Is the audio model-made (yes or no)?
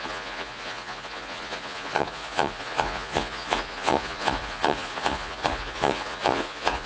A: yes